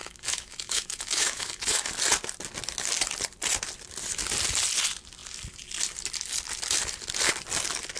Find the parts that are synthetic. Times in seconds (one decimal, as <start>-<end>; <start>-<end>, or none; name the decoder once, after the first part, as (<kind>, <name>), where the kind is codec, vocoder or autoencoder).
0.0-1.9 (autoencoder, DAC-VAE)